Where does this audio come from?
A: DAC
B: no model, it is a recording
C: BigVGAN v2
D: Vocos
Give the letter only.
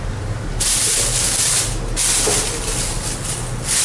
B